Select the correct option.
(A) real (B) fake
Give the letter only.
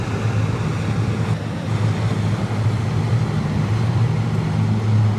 A